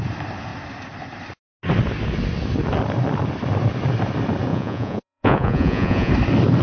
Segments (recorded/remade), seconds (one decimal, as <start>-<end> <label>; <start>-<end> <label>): 0.0-4.5 recorded; 4.5-6.1 remade; 6.1-6.6 recorded